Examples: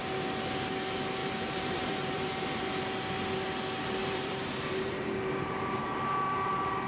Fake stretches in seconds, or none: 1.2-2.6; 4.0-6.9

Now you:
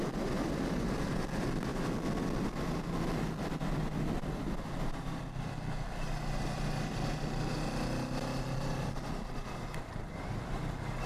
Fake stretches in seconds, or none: none

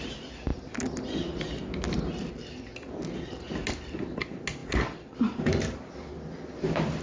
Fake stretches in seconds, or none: none

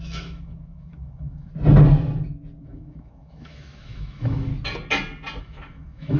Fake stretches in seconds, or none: 0.0-1.5; 2.6-4.5; 5.4-6.2

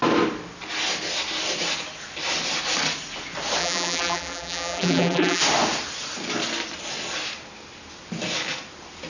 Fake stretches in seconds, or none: 3.6-5.4

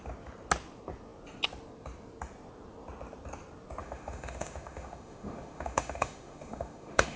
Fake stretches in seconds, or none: 3.8-7.2